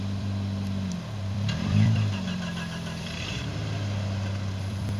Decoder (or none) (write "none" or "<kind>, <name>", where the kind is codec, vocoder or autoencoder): vocoder, BigVGAN v2